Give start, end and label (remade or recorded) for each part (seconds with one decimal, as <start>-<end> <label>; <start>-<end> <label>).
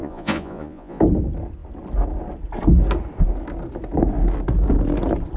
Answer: 0.0-1.0 remade; 1.0-5.4 recorded